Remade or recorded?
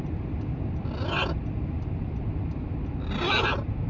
remade